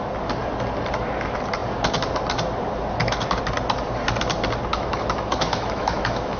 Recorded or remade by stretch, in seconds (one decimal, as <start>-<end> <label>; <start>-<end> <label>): 0.0-4.7 recorded; 4.7-6.4 remade